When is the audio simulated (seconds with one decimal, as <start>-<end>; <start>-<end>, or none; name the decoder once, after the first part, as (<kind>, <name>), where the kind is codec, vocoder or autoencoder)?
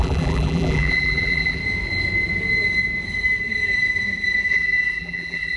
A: 0.0-1.6 (vocoder, BigVGAN v2); 4.5-5.6